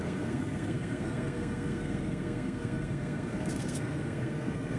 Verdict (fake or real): fake